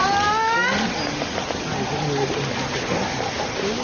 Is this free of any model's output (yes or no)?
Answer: yes